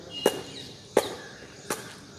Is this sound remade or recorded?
recorded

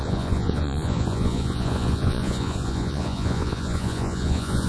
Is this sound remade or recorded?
remade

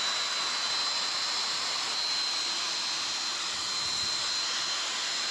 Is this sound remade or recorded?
recorded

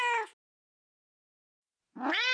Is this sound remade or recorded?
recorded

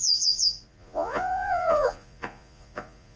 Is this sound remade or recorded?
remade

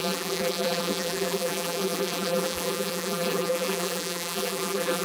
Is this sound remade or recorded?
remade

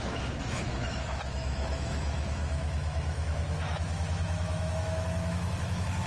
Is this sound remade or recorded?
remade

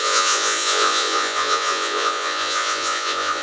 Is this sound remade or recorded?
remade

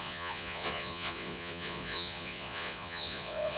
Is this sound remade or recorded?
remade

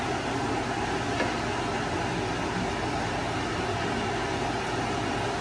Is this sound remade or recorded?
recorded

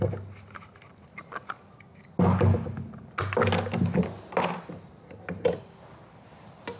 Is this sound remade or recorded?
recorded